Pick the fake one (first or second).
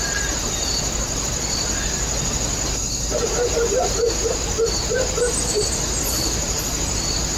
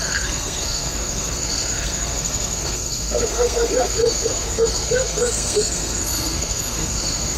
second